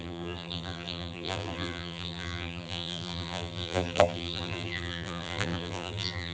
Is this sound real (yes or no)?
no